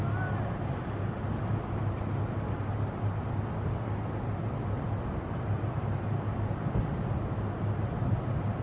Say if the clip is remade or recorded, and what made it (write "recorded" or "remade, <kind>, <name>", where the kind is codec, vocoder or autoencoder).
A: recorded